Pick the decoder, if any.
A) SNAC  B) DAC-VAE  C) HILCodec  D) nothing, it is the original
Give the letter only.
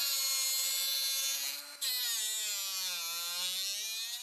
D